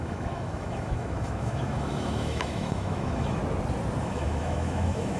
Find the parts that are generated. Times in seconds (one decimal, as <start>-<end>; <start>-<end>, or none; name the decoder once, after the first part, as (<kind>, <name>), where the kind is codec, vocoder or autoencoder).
0.0-3.4 (autoencoder, DAC-VAE); 4.0-5.2